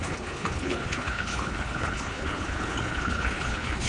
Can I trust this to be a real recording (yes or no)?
no